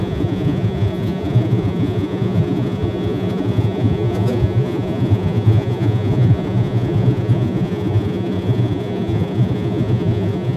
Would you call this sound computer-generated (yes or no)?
yes